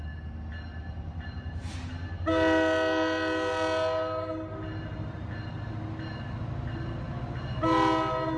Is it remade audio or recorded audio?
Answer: recorded